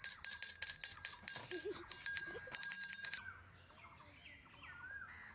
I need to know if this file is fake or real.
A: real